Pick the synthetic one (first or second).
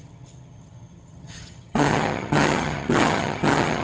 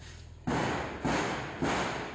first